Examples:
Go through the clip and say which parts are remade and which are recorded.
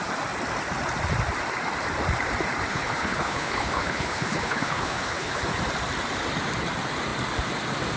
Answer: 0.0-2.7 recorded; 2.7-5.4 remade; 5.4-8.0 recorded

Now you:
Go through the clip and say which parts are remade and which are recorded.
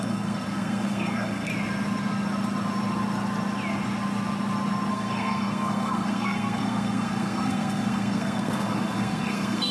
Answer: 0.0-1.5 remade; 1.5-4.9 recorded; 4.9-9.7 remade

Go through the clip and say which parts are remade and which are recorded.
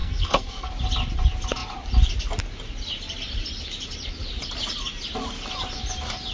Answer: 0.0-0.7 remade; 0.7-6.3 recorded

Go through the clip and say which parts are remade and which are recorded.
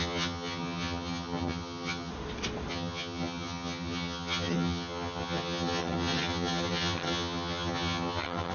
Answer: 0.0-2.1 remade; 2.1-2.7 recorded; 2.7-8.5 remade